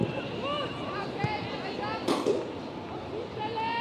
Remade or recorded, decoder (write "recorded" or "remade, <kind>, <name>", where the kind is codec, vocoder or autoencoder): recorded